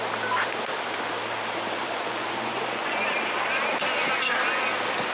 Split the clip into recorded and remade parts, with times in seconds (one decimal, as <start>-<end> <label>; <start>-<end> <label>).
0.0-1.8 recorded; 1.8-3.1 remade; 3.1-5.1 recorded